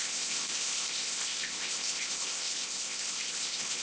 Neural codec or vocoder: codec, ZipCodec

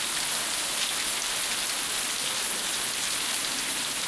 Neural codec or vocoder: none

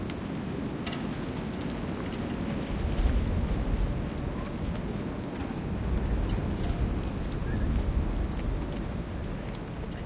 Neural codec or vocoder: none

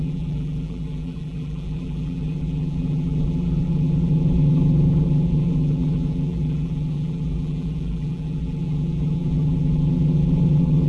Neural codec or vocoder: vocoder, BigVGAN v2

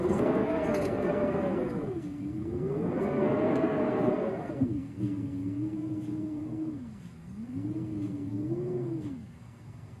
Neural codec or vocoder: codec, SNAC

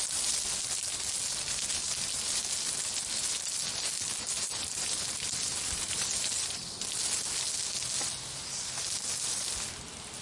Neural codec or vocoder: none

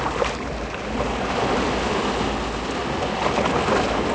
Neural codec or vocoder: none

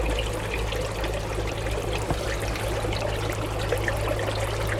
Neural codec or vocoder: none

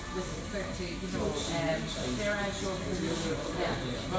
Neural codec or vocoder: none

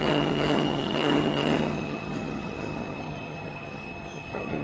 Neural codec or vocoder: vocoder, HiFi-GAN